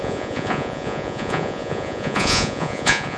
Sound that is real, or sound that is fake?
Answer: fake